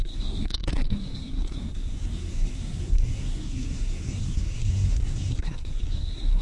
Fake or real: fake